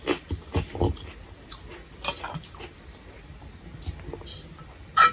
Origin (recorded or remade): recorded